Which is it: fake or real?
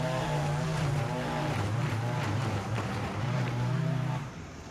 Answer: fake